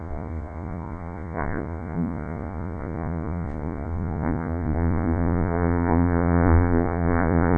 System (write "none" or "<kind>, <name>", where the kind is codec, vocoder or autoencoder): vocoder, Vocos